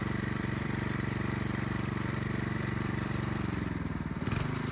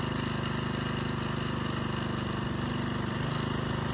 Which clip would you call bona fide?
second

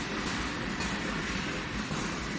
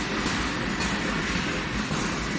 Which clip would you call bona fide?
second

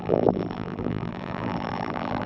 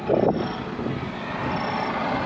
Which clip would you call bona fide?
second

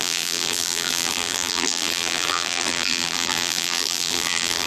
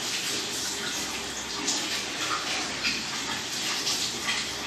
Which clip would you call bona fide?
second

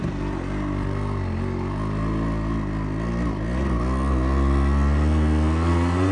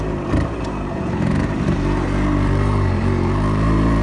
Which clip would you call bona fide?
first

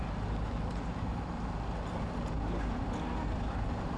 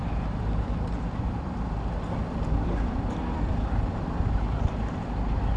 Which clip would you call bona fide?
first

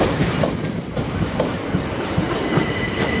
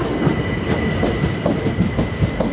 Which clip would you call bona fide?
second